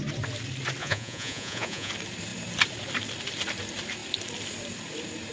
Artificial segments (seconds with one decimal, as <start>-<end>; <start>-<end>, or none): 0.8-1.9

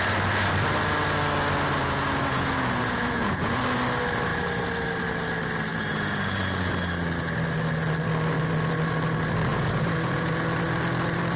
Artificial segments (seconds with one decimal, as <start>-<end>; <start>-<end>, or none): 1.8-3.6; 5.7-6.7; 9.5-10.3

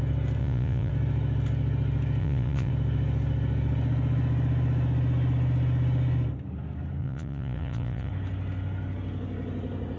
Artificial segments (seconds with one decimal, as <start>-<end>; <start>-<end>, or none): 0.4-0.9; 2.2-2.7; 7.0-8.1

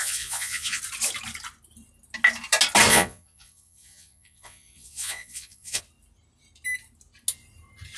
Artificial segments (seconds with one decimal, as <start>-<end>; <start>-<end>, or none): 0.0-0.8; 2.9-5.8

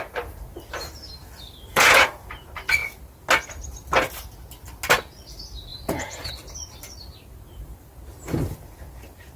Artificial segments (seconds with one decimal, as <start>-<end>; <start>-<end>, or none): 1.7-2.3; 5.7-6.3

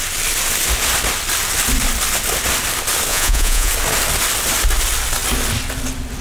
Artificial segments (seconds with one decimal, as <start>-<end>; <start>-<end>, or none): 3.1-3.7

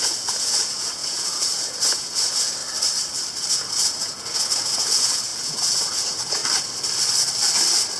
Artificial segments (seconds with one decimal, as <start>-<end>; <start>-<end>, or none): 0.0-2.6; 3.5-6.4